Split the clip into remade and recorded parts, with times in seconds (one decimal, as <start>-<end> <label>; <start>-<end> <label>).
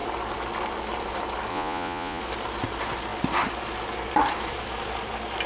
0.0-1.5 recorded; 1.5-2.2 remade; 2.2-5.5 recorded